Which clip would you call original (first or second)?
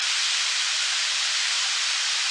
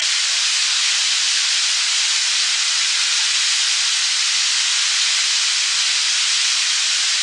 second